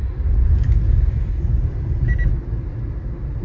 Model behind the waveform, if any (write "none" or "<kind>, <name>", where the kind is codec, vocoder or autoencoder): none